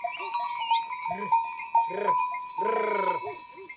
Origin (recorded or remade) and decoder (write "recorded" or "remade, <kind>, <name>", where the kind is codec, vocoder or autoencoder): recorded